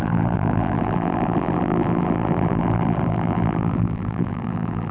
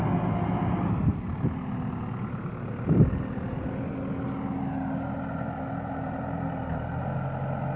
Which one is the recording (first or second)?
second